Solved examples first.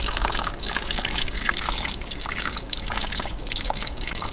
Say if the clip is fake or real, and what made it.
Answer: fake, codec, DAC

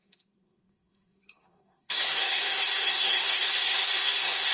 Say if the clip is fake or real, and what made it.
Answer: fake, codec, SNAC